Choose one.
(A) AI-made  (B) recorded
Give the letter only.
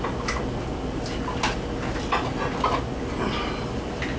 B